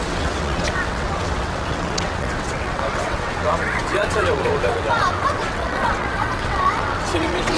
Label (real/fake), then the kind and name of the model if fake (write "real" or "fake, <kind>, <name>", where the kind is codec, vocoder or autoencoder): fake, vocoder, WaveNeXt